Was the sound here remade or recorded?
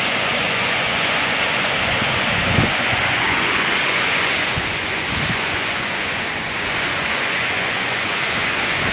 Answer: remade